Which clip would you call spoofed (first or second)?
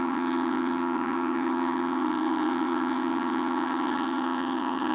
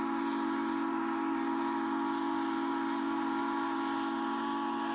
first